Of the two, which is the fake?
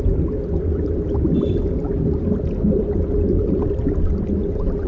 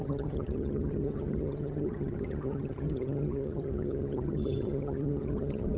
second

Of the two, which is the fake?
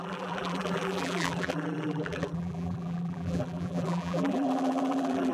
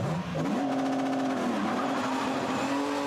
first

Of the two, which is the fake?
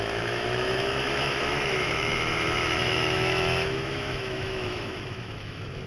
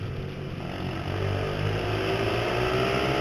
first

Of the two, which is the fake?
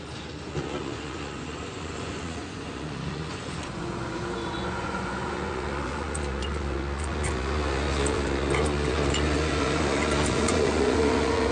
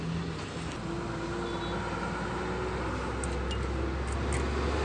first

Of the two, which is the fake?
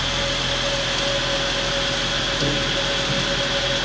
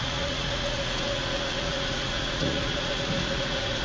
second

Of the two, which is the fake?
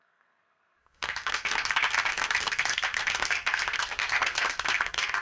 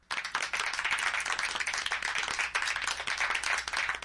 first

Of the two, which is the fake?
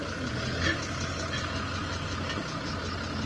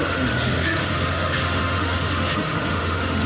second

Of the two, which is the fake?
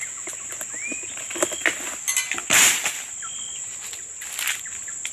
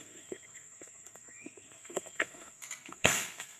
second